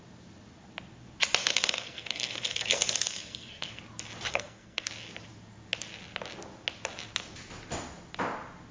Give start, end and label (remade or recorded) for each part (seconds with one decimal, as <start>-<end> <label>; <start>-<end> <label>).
0.0-1.4 recorded; 1.4-3.8 remade; 3.8-4.3 recorded; 4.3-4.9 remade; 4.9-8.7 recorded